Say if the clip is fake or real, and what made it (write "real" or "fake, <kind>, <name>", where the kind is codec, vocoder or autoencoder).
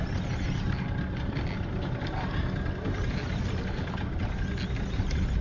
real